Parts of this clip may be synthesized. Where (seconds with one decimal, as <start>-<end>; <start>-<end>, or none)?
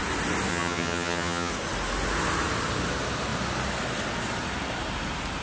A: 0.5-1.5